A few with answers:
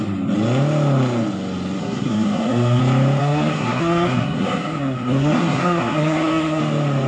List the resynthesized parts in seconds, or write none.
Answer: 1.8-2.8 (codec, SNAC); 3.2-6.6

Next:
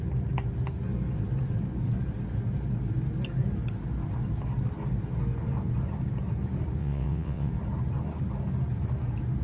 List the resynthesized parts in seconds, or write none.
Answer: 6.8-7.5 (vocoder, WaveNeXt)

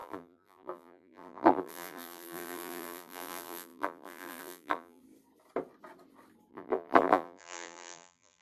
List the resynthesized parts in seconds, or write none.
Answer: 0.0-5.0 (vocoder, BigVGAN v2); 6.5-8.4

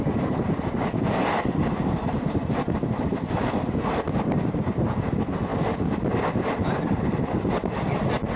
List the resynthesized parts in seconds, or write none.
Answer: none

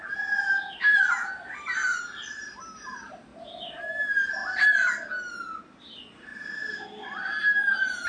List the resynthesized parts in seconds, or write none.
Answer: 0.0-3.3 (vocoder, BigVGAN v2); 3.8-4.4; 5.6-6.3; 7.0-8.1

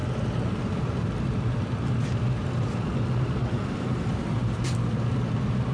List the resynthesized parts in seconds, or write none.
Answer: 0.6-5.7 (vocoder, BigVGAN v2)

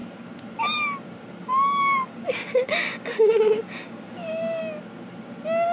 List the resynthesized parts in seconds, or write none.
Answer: 1.4-4.6 (codec, DAC)

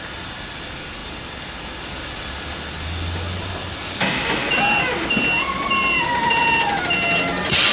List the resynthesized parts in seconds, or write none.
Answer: none